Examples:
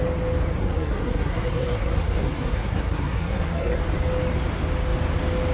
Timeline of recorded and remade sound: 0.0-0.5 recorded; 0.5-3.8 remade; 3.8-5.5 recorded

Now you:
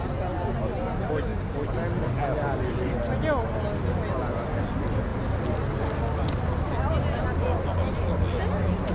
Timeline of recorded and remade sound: 0.0-8.9 recorded

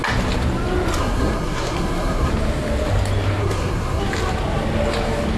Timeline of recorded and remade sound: 0.0-1.0 recorded; 1.0-2.3 remade; 2.3-3.4 recorded; 3.4-4.0 remade; 4.0-5.4 recorded